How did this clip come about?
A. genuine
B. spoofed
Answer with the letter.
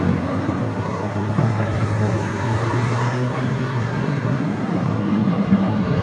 B